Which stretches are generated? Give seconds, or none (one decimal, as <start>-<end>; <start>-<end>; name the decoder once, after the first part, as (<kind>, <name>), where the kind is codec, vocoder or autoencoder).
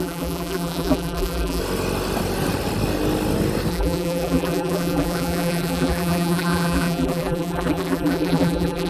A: 0.0-1.6 (vocoder, BigVGAN v2); 3.7-8.9